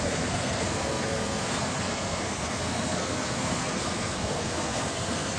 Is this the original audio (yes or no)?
no